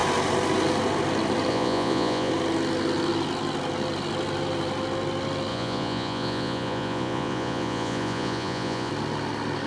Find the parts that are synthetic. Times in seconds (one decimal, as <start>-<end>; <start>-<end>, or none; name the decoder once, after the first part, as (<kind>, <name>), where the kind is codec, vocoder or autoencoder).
1.5-2.3 (vocoder, Vocos); 5.5-8.9